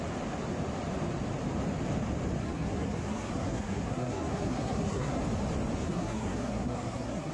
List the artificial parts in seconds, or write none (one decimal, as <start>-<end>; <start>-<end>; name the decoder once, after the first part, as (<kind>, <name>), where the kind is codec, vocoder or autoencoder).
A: 2.4-5.2 (codec, SNAC); 5.8-7.3